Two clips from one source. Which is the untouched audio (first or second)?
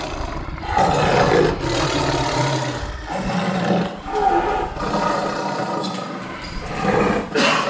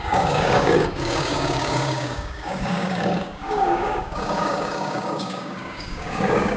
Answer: first